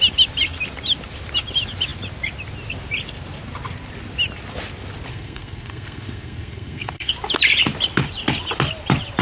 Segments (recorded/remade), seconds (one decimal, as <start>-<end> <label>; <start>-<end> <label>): 0.0-5.1 recorded; 5.1-7.1 remade; 7.1-9.2 recorded